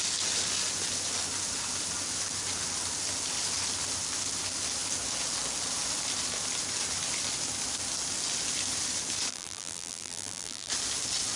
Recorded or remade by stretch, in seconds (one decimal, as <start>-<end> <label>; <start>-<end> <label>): 0.0-9.3 recorded; 9.3-10.7 remade; 10.7-11.4 recorded